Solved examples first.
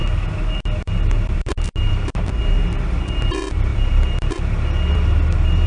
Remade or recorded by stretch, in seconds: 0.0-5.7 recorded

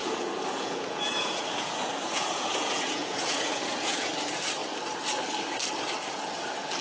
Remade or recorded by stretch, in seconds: 0.0-4.1 remade; 4.1-6.8 recorded